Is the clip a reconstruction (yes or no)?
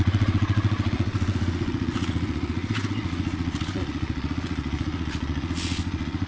yes